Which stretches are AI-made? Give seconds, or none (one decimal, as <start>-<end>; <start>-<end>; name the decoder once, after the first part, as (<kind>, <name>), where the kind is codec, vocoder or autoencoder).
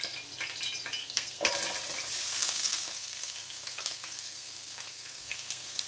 1.0-1.5 (codec, SNAC); 2.3-5.9